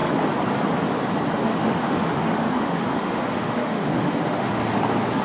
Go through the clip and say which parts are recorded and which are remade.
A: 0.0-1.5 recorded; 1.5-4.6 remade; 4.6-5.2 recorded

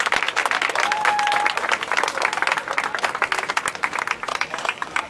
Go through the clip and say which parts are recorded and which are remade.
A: 0.0-4.3 recorded; 4.3-5.1 remade

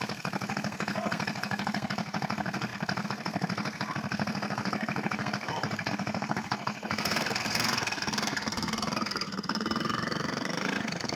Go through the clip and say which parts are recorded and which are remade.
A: 0.0-11.2 remade